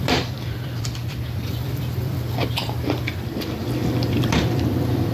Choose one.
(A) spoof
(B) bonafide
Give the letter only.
A